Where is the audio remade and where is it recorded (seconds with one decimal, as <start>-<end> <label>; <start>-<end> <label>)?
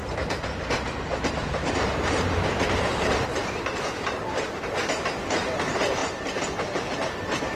0.0-4.8 remade; 4.8-5.4 recorded; 5.4-6.0 remade; 6.0-6.5 recorded; 6.5-7.6 remade